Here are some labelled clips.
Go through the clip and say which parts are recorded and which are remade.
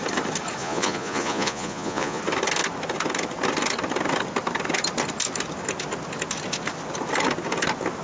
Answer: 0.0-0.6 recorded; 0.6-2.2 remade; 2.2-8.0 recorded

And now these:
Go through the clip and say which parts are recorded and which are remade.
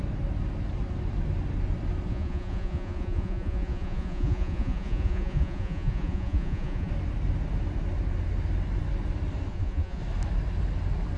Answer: 0.0-2.1 recorded; 2.1-6.9 remade; 6.9-9.5 recorded; 9.5-10.0 remade; 10.0-11.2 recorded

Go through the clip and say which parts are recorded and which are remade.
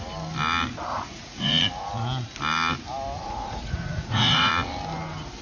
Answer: 0.0-0.9 recorded; 0.9-1.6 remade; 1.6-3.2 recorded; 3.2-4.5 remade; 4.5-5.4 recorded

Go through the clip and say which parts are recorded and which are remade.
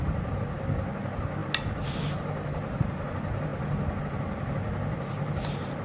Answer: 0.0-5.8 recorded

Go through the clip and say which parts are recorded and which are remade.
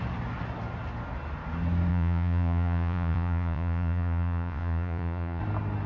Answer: 0.0-1.9 recorded; 1.9-5.4 remade; 5.4-5.9 recorded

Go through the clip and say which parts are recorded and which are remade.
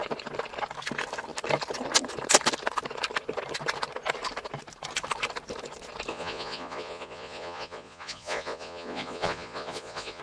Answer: 0.0-6.1 recorded; 6.1-10.2 remade